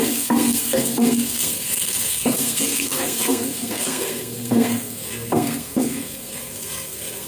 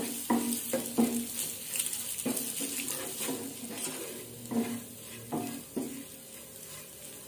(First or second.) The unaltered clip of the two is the second